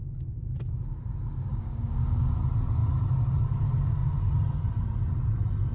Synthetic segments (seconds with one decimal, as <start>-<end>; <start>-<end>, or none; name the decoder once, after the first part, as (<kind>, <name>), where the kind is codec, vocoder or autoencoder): 1.5-2.4 (codec, DAC)